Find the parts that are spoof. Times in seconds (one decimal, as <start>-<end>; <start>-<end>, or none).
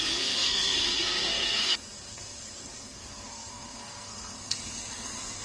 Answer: 0.0-5.4